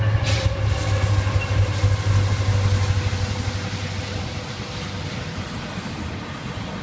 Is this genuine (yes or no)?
yes